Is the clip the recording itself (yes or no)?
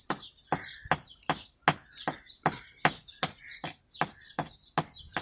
yes